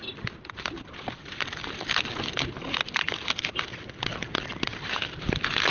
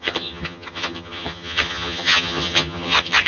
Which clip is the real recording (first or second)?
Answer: first